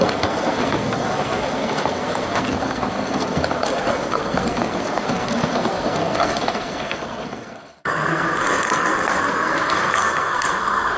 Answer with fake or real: fake